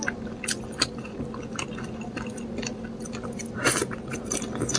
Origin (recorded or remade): recorded